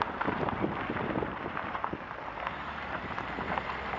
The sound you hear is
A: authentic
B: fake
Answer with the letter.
B